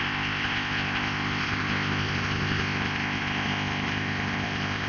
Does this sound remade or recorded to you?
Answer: remade